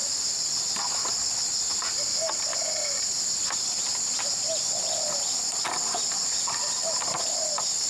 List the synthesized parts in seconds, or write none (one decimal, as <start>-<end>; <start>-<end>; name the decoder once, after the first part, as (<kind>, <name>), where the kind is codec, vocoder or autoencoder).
none